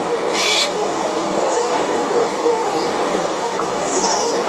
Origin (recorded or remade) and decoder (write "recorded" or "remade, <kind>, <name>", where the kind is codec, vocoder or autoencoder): remade, codec, DAC